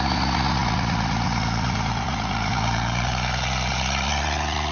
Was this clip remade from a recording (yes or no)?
yes